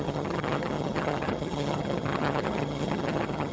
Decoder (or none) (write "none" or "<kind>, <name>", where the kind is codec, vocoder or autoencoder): vocoder, HiFi-GAN